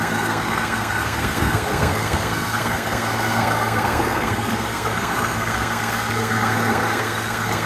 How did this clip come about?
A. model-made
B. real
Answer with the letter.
A